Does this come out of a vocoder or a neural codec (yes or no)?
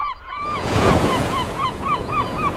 yes